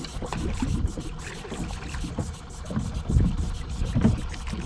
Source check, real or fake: real